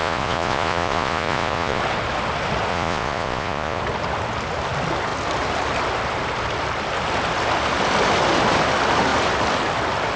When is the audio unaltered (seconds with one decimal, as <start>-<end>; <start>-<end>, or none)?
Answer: 1.8-2.7; 3.8-10.2

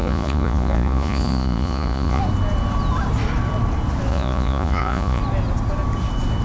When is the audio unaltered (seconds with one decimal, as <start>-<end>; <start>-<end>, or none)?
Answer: 2.2-4.1; 5.2-6.4

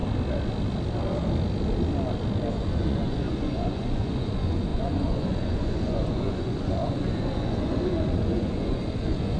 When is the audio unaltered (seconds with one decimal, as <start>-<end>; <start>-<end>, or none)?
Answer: 0.0-2.5

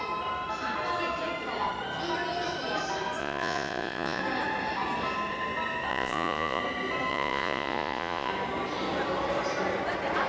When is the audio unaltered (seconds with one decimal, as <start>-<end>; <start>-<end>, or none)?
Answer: 0.0-3.2; 4.2-5.9; 6.6-7.1; 8.3-10.3

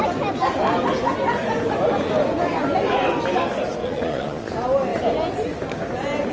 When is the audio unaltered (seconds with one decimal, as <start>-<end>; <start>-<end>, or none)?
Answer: 0.0-3.8; 4.5-6.3

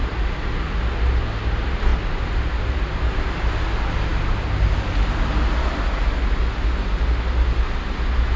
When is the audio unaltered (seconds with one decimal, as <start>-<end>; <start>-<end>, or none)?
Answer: 0.0-8.4